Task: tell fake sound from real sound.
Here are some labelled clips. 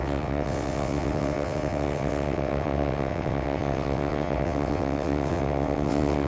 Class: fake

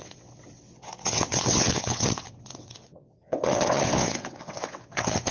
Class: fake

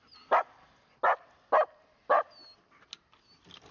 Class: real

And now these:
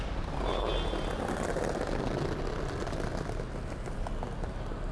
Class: real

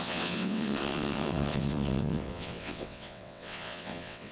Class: fake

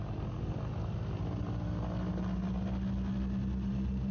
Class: real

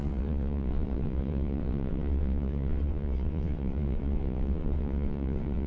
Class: fake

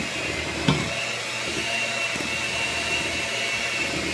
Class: real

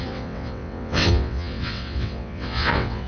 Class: fake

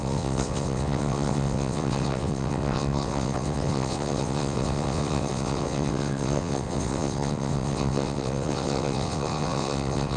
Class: fake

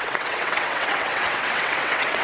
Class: fake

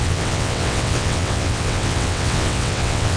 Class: fake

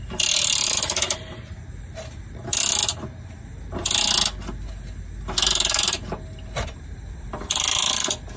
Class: real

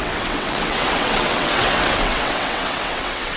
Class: fake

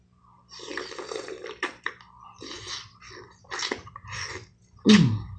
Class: real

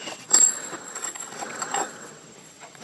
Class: fake